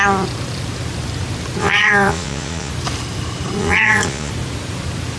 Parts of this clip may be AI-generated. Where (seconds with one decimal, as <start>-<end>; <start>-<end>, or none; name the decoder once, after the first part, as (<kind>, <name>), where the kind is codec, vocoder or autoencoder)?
1.6-2.7 (vocoder, Vocos); 3.6-4.3